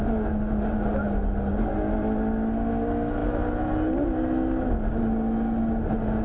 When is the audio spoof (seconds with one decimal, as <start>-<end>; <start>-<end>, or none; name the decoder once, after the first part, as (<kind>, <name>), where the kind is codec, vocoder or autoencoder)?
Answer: none